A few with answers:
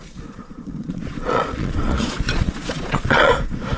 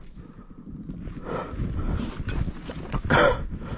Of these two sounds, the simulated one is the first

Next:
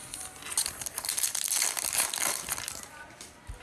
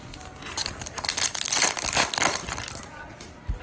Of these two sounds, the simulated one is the second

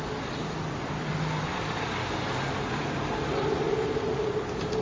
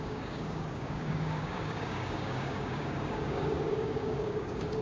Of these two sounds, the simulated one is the second